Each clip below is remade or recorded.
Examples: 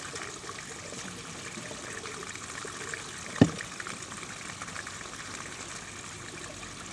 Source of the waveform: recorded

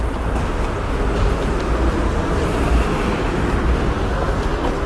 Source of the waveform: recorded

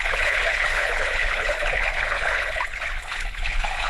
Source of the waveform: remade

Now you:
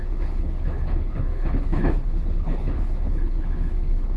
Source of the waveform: remade